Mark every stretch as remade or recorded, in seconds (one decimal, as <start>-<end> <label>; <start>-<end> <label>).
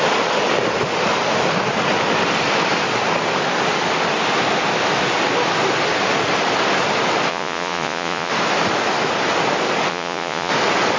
0.0-7.3 recorded; 7.3-8.3 remade; 8.3-9.9 recorded; 9.9-10.5 remade; 10.5-11.0 recorded